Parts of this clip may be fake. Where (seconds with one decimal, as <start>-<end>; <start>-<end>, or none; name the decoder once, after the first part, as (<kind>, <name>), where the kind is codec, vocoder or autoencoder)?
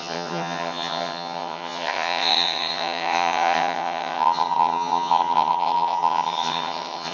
0.0-7.1 (vocoder, HiFi-GAN)